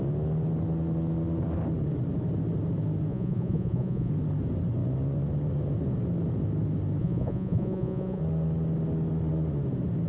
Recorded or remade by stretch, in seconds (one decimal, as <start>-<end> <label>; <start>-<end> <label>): 0.0-3.1 recorded; 3.1-4.1 remade; 4.1-7.0 recorded; 7.0-8.2 remade; 8.2-10.1 recorded